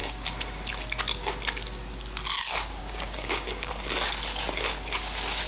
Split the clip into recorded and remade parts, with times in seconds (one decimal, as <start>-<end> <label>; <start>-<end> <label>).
0.0-2.8 recorded; 2.8-3.7 remade; 3.7-5.5 recorded